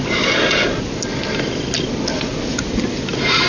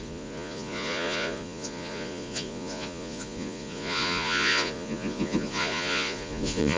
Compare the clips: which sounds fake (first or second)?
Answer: second